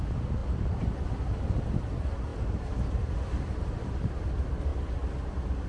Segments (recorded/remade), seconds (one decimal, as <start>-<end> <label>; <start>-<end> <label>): 0.0-5.7 recorded